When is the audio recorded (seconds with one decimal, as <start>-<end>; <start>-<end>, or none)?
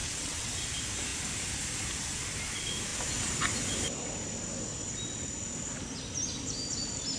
0.5-7.2